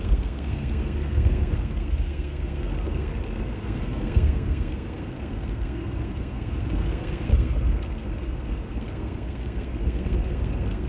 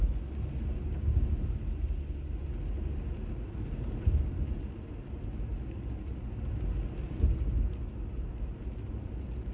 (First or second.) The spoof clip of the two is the first